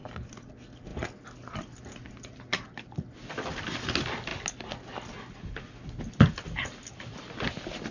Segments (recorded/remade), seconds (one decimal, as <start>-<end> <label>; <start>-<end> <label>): 0.0-7.9 recorded